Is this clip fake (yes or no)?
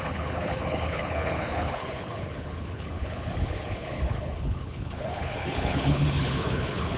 yes